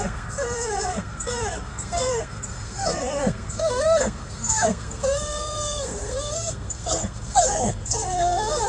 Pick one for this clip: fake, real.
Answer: fake